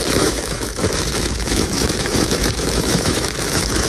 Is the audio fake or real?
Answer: fake